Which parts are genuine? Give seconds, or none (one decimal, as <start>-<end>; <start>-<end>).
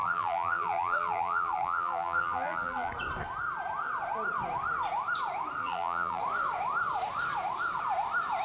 2.9-5.6; 6.2-8.4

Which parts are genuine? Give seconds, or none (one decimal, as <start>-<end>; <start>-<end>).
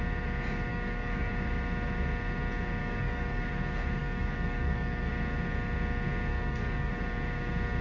0.0-0.7; 1.3-2.8; 3.5-4.0; 5.1-6.3; 6.9-7.8